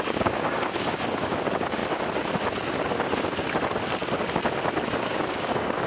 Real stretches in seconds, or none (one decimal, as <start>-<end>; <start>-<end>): 1.8-5.0